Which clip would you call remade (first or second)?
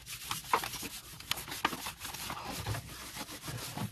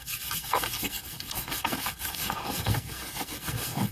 second